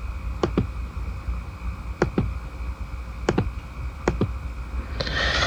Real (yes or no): yes